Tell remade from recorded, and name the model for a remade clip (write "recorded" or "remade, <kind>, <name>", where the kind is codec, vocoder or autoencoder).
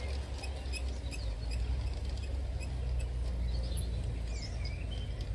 recorded